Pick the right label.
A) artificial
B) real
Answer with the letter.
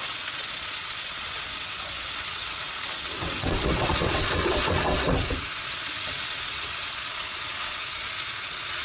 A